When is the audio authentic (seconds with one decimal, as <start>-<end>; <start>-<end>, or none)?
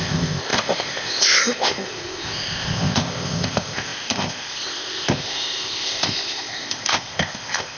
none